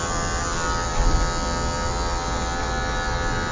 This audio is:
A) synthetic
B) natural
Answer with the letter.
B